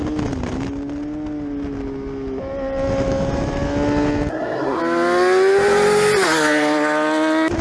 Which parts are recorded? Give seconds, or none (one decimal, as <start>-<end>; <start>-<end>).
0.0-4.3; 4.8-7.6